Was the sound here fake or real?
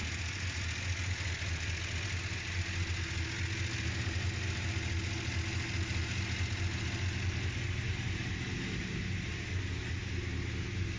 real